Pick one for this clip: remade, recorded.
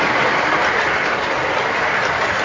recorded